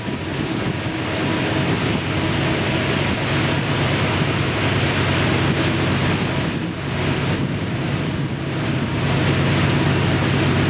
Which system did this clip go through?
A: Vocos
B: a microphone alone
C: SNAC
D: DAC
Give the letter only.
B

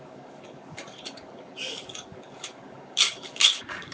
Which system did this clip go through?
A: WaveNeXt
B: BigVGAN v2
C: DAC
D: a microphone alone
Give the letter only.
C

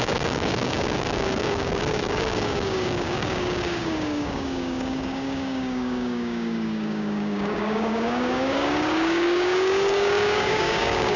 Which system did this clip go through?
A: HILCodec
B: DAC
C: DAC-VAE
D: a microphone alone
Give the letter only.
B